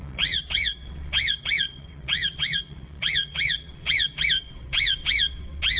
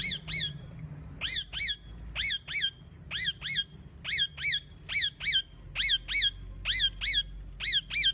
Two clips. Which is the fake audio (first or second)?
first